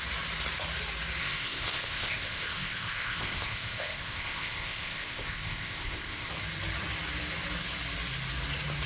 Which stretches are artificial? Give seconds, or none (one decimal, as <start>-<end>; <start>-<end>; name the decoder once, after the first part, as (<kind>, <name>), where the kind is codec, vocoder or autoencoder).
1.2-6.3 (codec, ZipCodec)